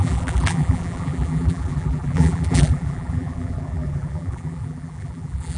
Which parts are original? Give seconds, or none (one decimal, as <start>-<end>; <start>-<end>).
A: none